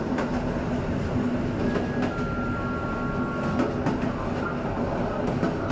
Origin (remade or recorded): recorded